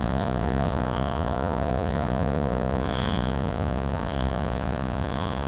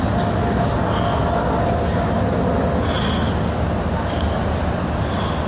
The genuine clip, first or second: second